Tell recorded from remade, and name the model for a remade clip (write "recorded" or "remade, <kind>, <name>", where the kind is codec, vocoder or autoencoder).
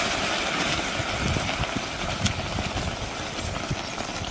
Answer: recorded